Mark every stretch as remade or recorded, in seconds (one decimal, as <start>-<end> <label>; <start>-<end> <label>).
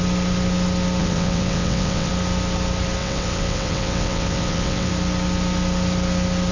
0.0-1.0 recorded; 1.0-2.1 remade; 2.1-3.0 recorded; 3.0-4.9 remade; 4.9-6.5 recorded